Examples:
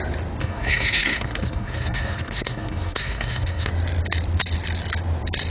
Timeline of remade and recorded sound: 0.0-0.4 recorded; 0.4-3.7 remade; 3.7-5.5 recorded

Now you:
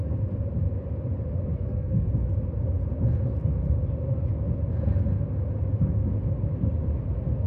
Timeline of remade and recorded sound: 0.0-1.5 recorded; 1.5-2.1 remade; 2.1-7.5 recorded

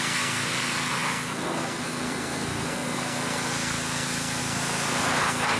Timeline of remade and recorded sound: 0.0-5.6 remade